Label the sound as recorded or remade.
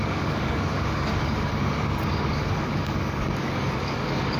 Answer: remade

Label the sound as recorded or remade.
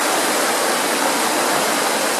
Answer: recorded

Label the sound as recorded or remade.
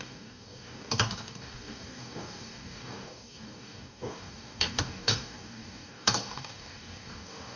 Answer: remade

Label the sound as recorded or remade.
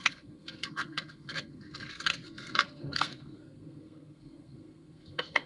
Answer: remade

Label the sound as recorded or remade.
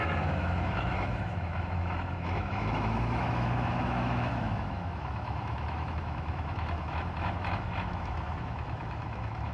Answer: remade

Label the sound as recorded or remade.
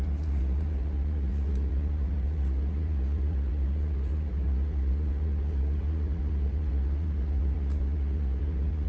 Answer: remade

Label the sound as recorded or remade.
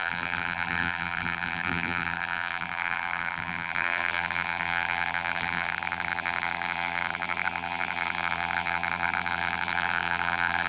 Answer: remade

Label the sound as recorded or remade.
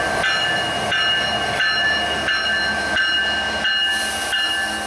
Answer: recorded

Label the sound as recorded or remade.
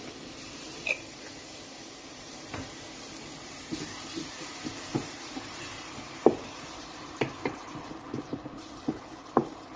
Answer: remade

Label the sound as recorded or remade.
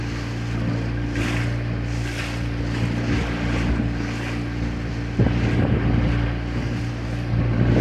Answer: recorded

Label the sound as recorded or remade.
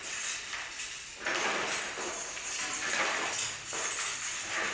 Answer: recorded